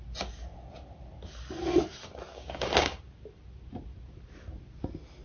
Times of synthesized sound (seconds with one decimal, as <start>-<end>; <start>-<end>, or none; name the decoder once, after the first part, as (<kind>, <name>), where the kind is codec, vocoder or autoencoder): 2.3-3.0 (codec, DAC)